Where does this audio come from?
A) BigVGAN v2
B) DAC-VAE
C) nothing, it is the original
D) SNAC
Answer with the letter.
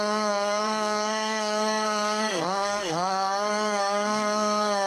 D